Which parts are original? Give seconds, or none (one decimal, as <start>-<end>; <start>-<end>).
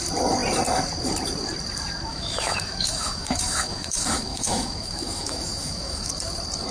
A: 0.0-2.1; 6.1-6.7